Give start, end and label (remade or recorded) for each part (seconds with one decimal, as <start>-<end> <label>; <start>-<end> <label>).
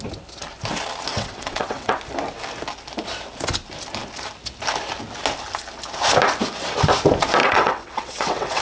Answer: 0.0-1.1 recorded; 1.1-1.9 remade; 1.9-7.4 recorded; 7.4-8.6 remade